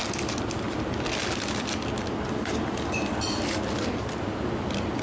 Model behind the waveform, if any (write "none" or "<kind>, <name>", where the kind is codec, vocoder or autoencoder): none